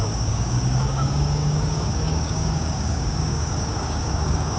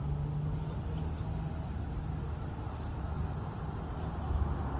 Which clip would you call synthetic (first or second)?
first